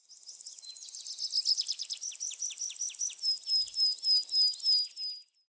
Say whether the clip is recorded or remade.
recorded